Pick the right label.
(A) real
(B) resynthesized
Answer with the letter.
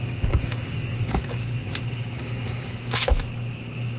B